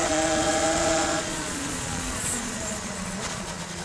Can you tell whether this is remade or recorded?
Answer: remade